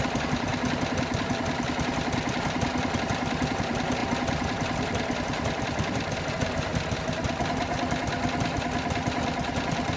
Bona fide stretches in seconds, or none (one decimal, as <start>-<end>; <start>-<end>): 0.5-3.0; 6.7-9.6